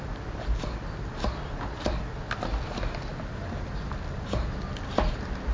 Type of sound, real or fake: real